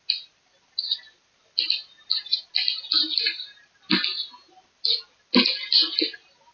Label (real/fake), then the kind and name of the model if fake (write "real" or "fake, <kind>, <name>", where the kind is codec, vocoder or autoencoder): real